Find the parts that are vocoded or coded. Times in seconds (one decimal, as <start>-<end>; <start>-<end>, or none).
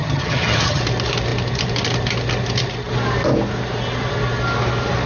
0.0-0.8